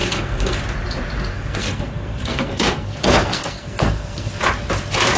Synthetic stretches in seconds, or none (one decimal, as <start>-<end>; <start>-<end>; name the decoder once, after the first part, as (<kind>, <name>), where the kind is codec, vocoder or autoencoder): 0.0-0.6 (codec, SNAC); 1.3-4.3